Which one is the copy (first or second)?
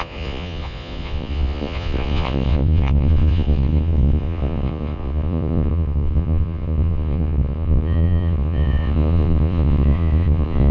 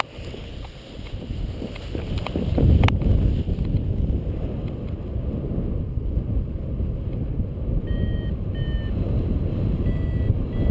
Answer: first